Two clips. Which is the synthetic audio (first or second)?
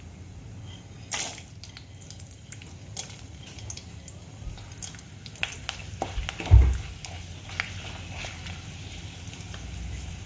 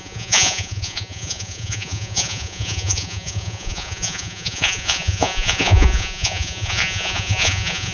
second